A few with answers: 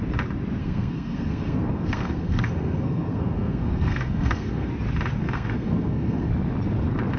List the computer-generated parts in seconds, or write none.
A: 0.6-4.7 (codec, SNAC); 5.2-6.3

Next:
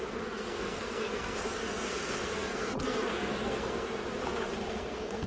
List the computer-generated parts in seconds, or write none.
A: 0.0-4.0 (codec, SNAC); 4.7-5.3

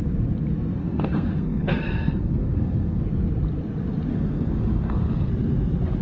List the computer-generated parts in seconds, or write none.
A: 0.8-3.0 (codec, SNAC); 4.1-5.3

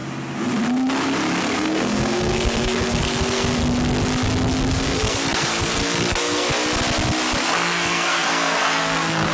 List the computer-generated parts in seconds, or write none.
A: 1.4-3.6 (codec, SNAC); 4.7-6.5; 7.4-9.3

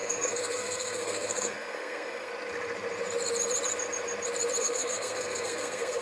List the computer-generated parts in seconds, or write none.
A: 0.0-2.3 (codec, SNAC); 4.6-6.0